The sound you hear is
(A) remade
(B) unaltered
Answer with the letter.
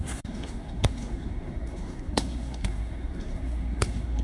A